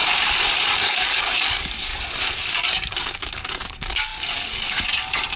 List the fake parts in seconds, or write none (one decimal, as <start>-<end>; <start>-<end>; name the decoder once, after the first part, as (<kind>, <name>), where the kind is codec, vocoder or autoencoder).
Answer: 0.8-1.9 (codec, DAC); 2.6-5.4